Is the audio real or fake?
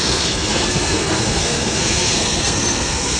fake